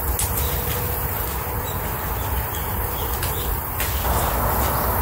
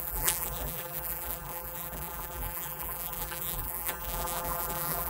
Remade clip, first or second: second